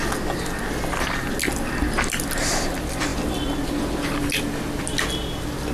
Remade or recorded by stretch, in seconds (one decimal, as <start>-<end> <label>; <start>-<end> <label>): 0.0-5.7 recorded